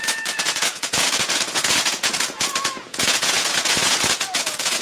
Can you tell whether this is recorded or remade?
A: remade